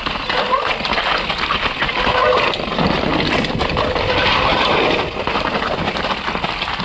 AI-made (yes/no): no